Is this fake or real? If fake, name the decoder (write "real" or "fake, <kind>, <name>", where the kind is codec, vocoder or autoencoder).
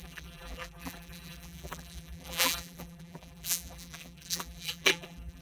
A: fake, vocoder, BigVGAN v2